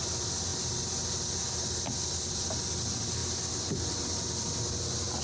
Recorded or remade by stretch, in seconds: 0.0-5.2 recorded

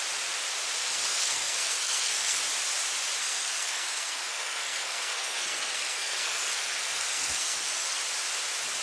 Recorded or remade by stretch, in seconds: 0.0-0.8 recorded; 0.8-2.4 remade; 2.4-3.2 recorded; 3.2-8.0 remade; 8.0-8.8 recorded